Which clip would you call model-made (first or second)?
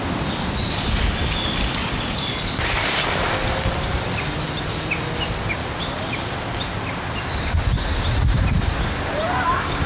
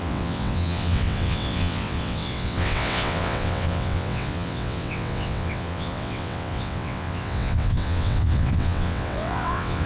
second